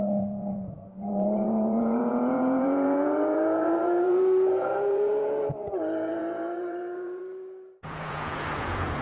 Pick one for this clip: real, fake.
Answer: fake